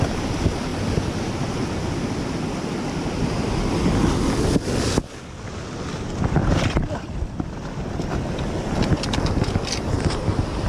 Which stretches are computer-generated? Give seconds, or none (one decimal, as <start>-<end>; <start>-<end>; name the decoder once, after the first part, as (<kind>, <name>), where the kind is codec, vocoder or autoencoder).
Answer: 0.7-1.3 (vocoder, BigVGAN v2); 6.4-7.4